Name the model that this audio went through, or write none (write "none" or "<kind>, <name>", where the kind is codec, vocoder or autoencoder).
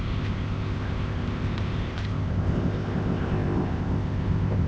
codec, ZipCodec